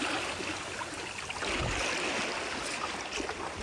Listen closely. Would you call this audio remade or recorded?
recorded